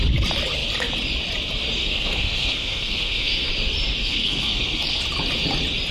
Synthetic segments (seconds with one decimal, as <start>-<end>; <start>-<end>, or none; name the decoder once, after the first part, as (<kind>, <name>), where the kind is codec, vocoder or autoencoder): 1.8-3.5 (codec, SNAC); 4.0-5.0